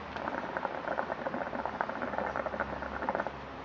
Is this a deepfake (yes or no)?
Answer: no